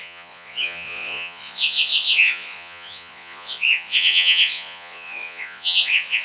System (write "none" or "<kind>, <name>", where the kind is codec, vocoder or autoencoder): vocoder, Vocos